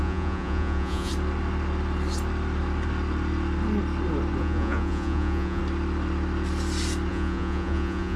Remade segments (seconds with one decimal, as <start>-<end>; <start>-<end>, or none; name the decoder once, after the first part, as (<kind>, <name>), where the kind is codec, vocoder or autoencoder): 0.0-1.1 (vocoder, Vocos); 4.4-5.6; 7.1-8.2